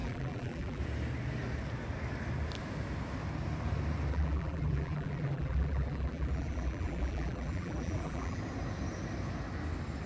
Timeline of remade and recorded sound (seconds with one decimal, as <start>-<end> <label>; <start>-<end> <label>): 0.0-0.8 remade; 0.8-4.1 recorded; 4.1-8.4 remade; 8.4-10.1 recorded